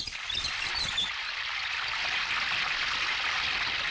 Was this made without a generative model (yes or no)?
yes